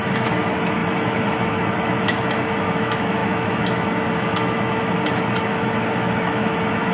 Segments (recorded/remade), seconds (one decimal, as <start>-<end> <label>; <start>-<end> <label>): 0.0-6.9 remade